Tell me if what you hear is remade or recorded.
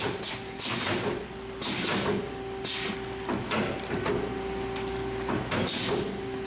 recorded